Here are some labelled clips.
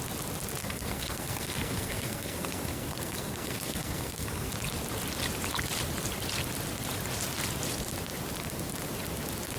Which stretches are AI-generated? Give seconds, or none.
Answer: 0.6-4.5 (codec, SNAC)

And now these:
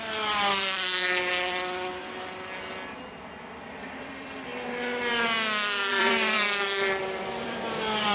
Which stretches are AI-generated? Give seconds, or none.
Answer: 0.0-4.5 (vocoder, BigVGAN v2); 5.9-8.1